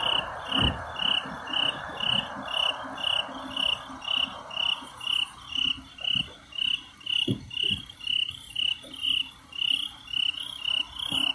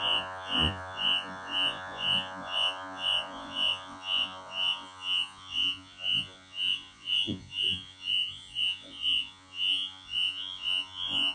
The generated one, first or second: second